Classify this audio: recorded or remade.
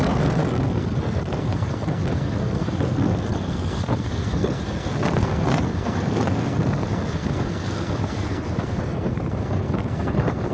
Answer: remade